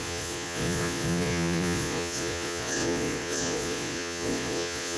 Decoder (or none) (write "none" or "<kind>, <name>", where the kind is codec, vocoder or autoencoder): vocoder, Vocos